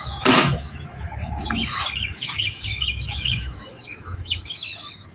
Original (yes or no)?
no